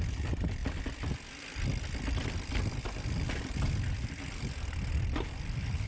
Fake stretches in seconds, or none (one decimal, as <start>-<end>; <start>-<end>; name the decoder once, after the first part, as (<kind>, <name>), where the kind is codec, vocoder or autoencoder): none

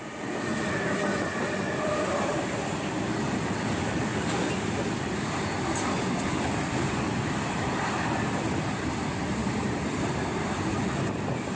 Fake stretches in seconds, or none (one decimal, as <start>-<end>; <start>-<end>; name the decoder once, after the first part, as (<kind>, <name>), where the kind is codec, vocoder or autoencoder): 9.4-10.5 (vocoder, BigVGAN v2)